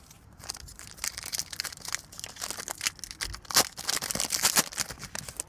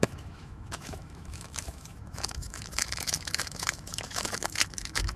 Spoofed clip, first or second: second